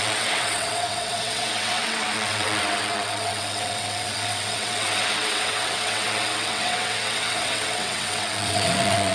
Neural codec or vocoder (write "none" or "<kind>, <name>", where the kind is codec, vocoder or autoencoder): vocoder, WaveNeXt